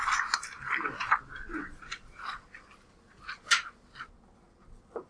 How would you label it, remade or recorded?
recorded